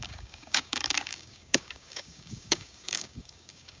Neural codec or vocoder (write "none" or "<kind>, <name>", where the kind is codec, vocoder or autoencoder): codec, DAC